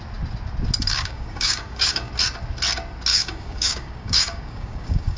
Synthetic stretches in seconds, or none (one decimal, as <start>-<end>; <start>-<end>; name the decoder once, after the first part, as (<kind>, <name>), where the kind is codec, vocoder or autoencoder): 0.8-2.1 (codec, DAC); 3.1-5.2